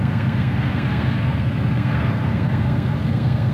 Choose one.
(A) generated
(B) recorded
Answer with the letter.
A